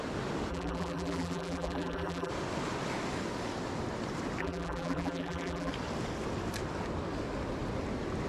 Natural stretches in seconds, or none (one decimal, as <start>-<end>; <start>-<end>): 0.0-0.5; 2.3-4.4; 5.7-8.3